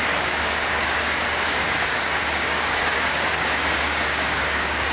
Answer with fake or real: fake